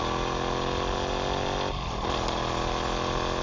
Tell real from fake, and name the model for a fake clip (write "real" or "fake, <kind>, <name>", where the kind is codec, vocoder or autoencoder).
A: real